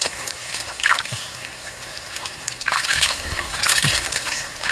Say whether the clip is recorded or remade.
remade